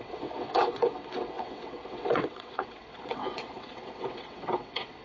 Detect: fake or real fake